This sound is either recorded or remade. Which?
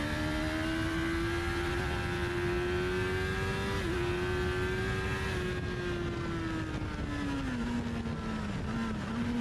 recorded